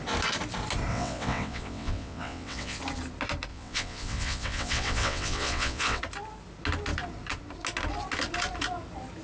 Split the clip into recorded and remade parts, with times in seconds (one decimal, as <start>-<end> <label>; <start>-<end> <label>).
0.0-0.9 recorded; 0.9-2.8 remade; 2.8-3.5 recorded; 3.5-6.0 remade; 6.0-9.2 recorded